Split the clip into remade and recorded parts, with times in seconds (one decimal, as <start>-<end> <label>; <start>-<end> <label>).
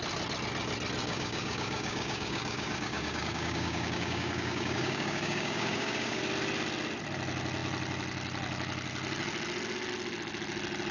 0.0-1.0 recorded; 1.0-6.2 remade; 6.2-10.9 recorded